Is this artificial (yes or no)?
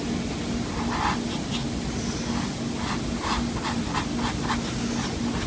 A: no